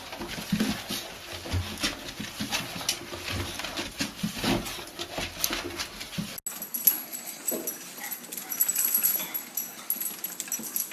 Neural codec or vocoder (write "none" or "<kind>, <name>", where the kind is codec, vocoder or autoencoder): none